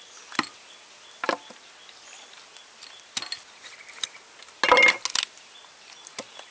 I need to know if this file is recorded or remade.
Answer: recorded